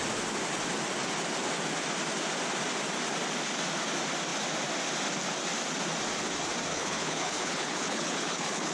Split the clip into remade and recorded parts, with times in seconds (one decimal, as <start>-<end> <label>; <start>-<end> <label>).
0.0-6.7 recorded; 6.7-8.7 remade